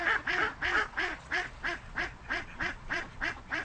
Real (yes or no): no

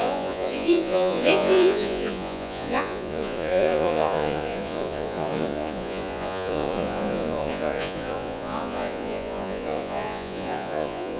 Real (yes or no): no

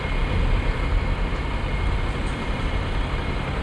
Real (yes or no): yes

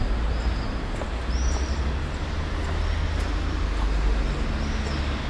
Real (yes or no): yes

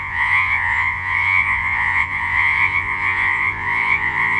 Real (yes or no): no